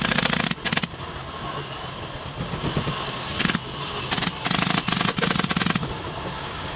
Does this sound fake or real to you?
real